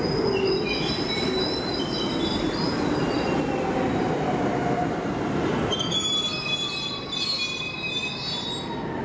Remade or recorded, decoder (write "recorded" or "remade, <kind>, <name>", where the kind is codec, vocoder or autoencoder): recorded